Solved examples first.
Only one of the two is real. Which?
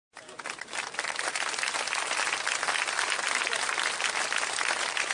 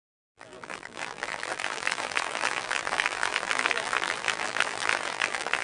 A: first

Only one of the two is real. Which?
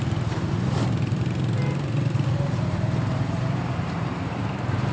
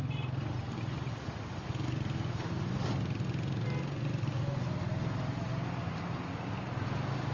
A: second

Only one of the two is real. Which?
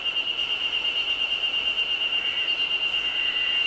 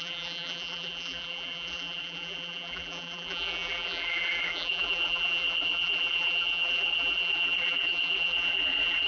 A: first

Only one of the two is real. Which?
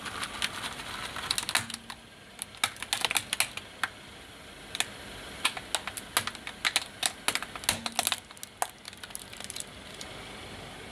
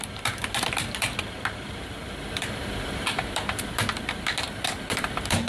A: first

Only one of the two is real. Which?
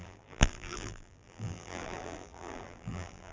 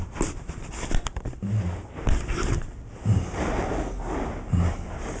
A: second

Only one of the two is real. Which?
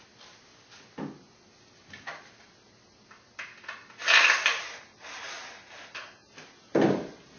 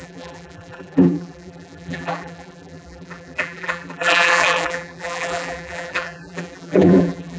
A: first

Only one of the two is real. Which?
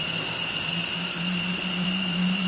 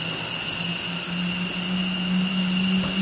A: second